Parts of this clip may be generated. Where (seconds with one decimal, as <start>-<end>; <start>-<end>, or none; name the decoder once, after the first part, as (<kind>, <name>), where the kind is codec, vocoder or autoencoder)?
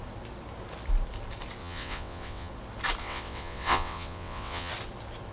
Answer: 1.6-2.5 (vocoder, WaveNeXt); 3.0-4.7